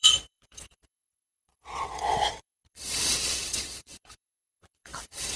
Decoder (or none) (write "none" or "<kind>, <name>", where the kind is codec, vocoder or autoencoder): vocoder, WaveNeXt